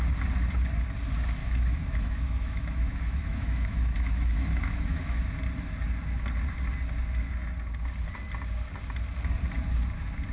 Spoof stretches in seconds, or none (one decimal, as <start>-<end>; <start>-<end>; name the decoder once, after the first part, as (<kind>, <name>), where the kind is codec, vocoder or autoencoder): 1.4-5.2 (autoencoder, DAC-VAE)

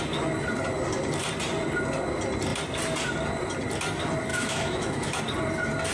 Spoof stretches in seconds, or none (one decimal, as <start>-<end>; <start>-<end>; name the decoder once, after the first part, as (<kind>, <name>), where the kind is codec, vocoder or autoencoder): 4.3-5.2 (autoencoder, DAC-VAE)

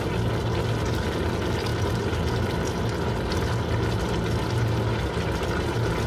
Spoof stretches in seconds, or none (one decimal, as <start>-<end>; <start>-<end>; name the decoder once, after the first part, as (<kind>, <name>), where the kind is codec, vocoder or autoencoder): none

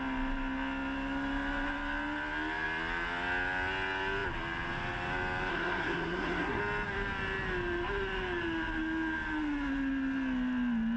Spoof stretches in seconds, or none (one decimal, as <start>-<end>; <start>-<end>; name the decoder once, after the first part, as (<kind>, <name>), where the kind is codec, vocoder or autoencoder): 5.5-6.6 (codec, SNAC)

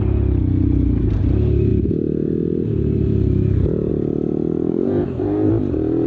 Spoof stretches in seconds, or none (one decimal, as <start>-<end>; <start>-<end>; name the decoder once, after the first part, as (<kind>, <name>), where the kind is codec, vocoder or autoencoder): 4.7-5.5 (codec, DAC)

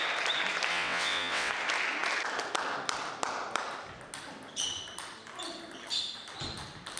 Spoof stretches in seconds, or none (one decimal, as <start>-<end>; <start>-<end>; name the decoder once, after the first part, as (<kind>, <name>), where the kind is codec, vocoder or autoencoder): 0.7-1.5 (vocoder, WaveNeXt)

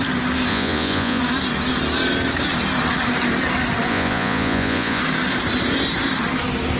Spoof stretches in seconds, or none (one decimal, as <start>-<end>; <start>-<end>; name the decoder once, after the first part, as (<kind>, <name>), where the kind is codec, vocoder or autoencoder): 0.5-1.2 (vocoder, Vocos); 3.9-5.0

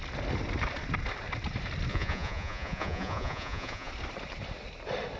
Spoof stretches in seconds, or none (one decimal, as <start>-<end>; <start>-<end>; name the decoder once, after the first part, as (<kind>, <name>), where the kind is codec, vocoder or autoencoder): 1.9-3.9 (vocoder, Vocos)